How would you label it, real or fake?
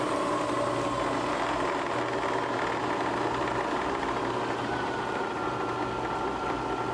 real